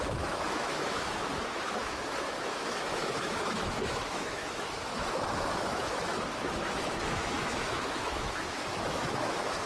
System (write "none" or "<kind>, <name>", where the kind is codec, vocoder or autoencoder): autoencoder, DAC-VAE